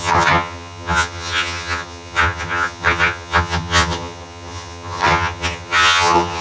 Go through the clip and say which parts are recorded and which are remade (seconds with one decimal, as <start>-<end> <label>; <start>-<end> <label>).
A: 0.0-6.4 remade